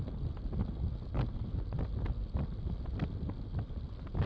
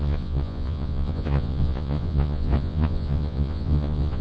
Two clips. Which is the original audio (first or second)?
first